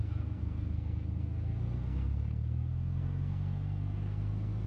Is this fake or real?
fake